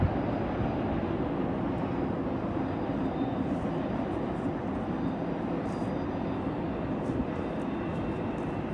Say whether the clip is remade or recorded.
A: recorded